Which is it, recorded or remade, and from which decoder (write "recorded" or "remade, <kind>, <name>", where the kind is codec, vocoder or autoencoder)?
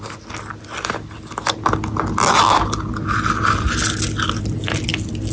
recorded